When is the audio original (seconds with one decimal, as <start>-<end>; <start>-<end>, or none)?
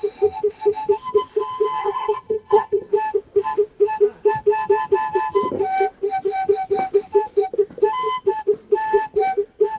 0.0-1.8; 2.9-9.8